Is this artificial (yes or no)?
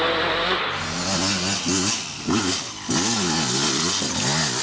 no